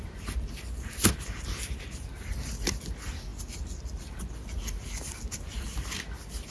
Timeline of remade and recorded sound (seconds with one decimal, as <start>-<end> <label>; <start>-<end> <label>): 0.0-6.5 recorded